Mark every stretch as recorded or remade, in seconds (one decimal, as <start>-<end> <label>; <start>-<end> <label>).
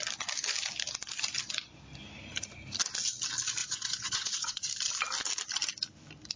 0.0-3.6 recorded; 3.6-4.7 remade; 4.7-6.4 recorded